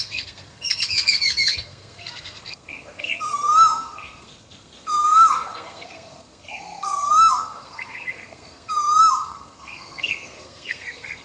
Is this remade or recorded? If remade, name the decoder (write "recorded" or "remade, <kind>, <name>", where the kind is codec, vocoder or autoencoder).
remade, codec, SNAC